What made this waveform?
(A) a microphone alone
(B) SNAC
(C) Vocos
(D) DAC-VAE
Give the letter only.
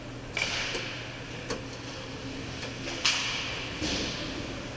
A